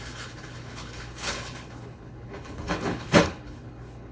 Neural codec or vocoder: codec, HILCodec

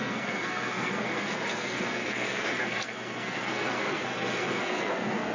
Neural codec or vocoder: codec, SNAC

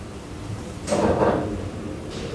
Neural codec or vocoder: vocoder, BigVGAN v2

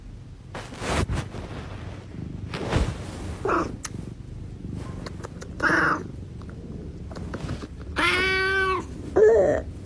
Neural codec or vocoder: none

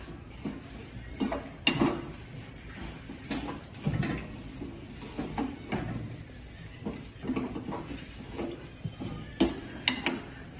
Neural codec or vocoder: none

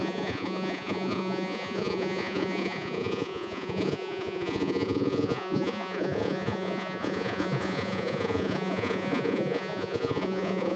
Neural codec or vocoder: vocoder, Vocos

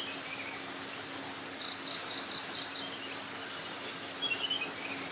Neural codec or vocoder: none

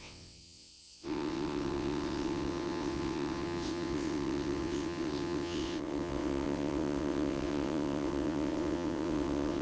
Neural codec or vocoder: vocoder, WaveNeXt